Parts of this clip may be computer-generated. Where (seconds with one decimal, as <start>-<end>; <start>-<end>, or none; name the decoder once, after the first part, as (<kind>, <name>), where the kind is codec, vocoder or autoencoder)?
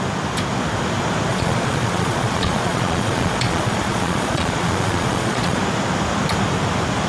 1.3-5.6 (vocoder, Vocos)